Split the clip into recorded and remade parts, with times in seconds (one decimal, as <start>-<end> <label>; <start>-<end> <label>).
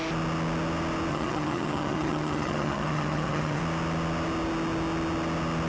0.0-1.1 recorded; 1.1-3.6 remade; 3.6-5.7 recorded